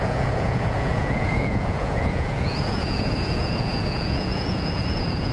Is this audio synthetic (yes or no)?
yes